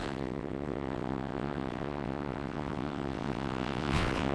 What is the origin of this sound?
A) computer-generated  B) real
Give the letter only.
A